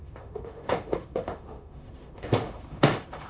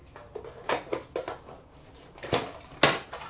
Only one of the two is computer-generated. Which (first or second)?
first